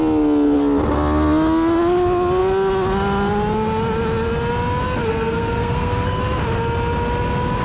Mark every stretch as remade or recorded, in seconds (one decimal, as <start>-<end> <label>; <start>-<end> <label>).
0.0-5.1 recorded; 5.1-6.2 remade; 6.2-7.6 recorded